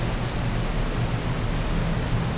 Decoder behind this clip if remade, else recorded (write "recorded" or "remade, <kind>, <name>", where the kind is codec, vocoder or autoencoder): recorded